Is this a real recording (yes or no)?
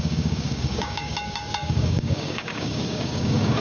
no